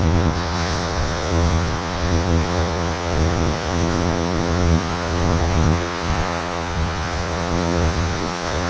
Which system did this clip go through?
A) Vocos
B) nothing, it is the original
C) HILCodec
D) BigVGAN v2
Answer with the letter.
A